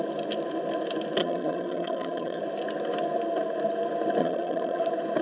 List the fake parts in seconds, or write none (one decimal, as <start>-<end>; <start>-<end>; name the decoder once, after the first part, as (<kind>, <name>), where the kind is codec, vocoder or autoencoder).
1.2-2.4 (vocoder, HiFi-GAN); 4.2-4.8